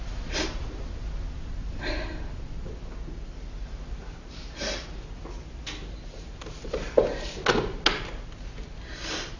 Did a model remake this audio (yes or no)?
no